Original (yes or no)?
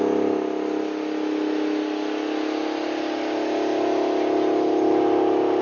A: yes